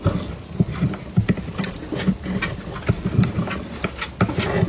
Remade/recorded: recorded